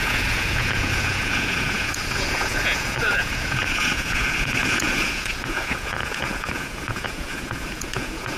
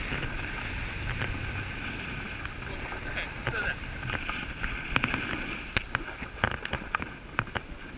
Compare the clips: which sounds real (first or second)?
second